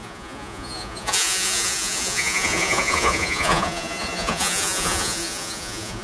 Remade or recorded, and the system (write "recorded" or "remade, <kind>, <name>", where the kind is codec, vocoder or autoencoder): remade, vocoder, Vocos